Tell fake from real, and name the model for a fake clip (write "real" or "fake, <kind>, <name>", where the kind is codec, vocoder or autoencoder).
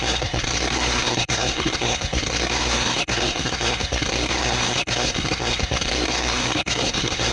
fake, codec, SNAC